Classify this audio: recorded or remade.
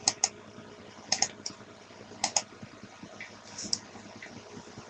recorded